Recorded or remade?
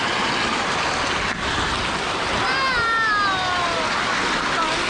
recorded